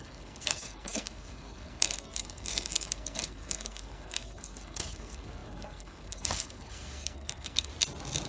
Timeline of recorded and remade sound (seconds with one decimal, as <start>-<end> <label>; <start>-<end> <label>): 0.0-7.7 remade; 7.7-8.3 recorded